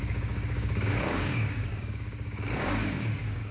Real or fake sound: fake